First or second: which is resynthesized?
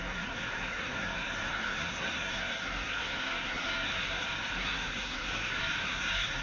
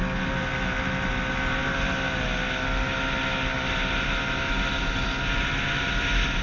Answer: first